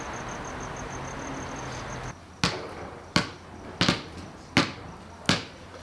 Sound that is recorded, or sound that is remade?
recorded